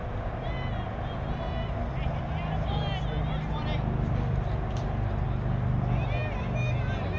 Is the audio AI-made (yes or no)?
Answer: no